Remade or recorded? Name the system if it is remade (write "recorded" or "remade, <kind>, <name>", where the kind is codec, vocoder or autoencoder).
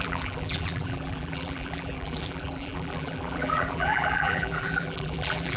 remade, vocoder, BigVGAN v2